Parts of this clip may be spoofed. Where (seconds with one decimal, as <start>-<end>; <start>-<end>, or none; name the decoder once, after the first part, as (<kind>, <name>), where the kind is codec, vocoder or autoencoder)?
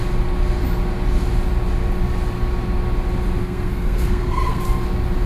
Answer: 3.4-4.6 (codec, SNAC)